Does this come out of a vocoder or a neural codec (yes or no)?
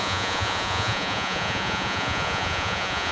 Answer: yes